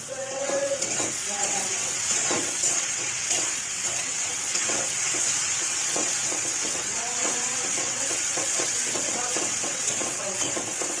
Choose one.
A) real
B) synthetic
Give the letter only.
B